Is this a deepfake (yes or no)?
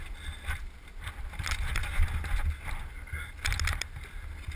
no